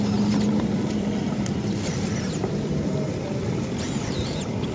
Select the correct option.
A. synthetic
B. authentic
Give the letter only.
B